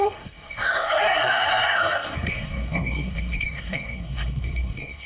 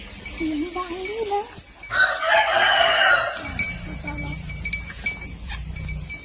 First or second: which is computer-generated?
first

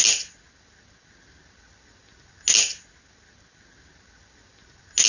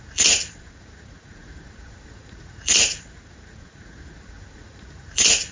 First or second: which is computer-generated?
second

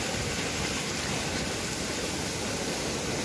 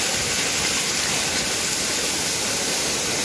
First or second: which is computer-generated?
second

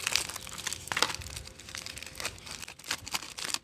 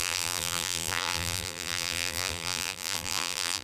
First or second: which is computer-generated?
second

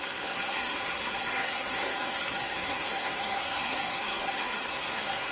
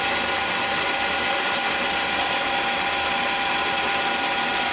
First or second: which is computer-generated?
first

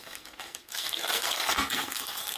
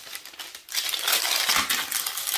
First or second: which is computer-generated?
first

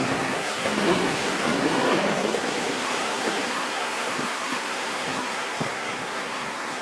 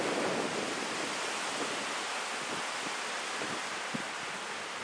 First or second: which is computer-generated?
first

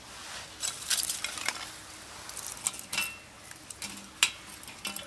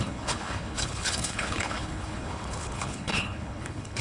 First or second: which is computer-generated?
second